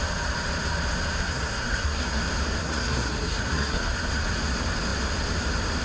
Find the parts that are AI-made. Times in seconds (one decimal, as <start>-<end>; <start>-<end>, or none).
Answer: 1.2-2.2; 2.6-4.0